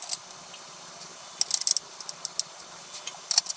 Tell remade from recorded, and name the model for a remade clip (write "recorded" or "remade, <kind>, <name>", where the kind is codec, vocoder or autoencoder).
recorded